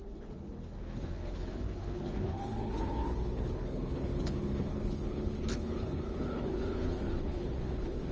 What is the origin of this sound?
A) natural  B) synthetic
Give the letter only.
B